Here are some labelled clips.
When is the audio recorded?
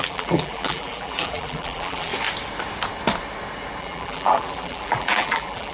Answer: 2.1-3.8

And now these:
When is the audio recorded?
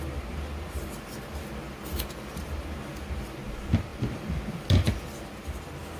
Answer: 0.0-6.0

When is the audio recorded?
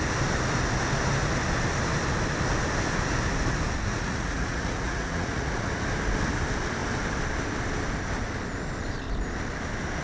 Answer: 0.0-3.9; 5.7-10.0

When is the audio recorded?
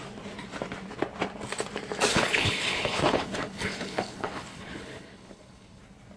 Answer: 0.0-2.1; 5.8-6.2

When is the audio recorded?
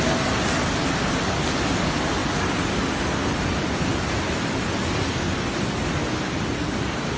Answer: 0.0-7.2